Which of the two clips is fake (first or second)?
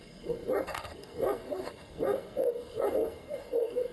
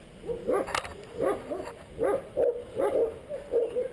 first